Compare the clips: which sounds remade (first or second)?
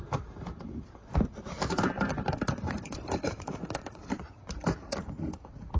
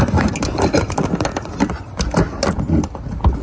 first